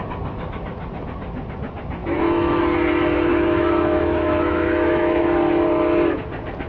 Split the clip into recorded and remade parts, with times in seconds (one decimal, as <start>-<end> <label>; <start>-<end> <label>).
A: 0.0-2.0 recorded; 2.0-2.6 remade; 2.6-3.3 recorded; 3.3-5.2 remade; 5.2-6.7 recorded